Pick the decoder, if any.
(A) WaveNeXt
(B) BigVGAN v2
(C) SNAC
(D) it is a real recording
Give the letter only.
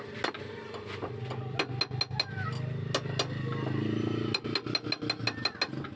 D